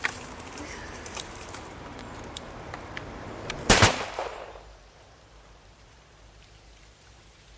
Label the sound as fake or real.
fake